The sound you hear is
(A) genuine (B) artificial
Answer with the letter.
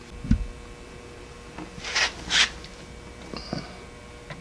A